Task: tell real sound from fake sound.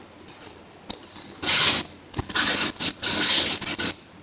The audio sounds real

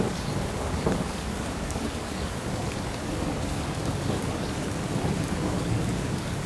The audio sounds fake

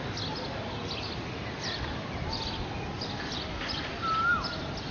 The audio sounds real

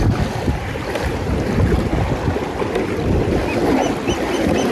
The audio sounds real